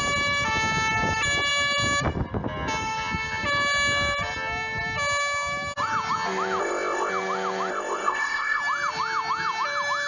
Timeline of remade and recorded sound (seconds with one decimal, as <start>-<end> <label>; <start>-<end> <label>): 0.0-6.6 recorded; 6.6-7.1 remade; 7.1-7.7 recorded; 7.7-8.6 remade; 8.6-10.1 recorded